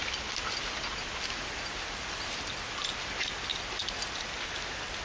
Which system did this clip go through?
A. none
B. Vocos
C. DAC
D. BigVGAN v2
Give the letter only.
A